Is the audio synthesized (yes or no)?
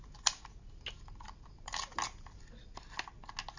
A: no